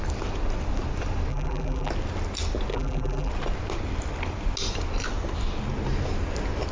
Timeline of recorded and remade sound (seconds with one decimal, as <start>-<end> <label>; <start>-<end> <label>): 0.0-1.3 recorded; 1.3-1.9 remade; 1.9-2.7 recorded; 2.7-3.3 remade; 3.3-6.7 recorded

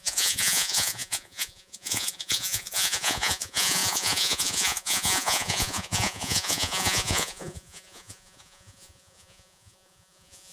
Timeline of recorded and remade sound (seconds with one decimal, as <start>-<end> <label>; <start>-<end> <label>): 0.0-10.5 remade